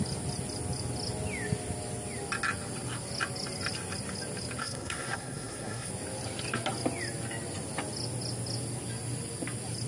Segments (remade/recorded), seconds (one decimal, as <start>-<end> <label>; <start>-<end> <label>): 0.0-4.6 recorded; 4.6-5.9 remade; 5.9-9.9 recorded